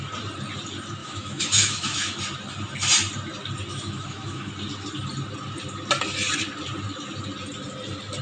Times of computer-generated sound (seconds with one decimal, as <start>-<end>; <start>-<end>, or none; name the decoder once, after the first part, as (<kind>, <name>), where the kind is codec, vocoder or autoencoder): 1.0-2.2 (autoencoder, DAC-VAE); 3.7-4.5